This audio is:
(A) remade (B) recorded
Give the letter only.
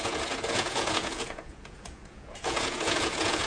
A